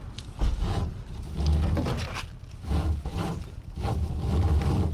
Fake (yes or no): no